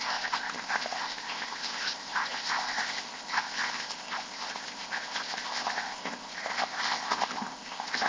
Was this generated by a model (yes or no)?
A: yes